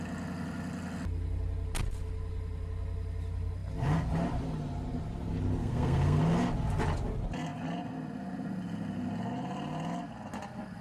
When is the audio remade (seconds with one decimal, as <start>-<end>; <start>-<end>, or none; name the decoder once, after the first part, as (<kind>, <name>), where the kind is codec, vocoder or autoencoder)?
5.6-6.2 (codec, SNAC)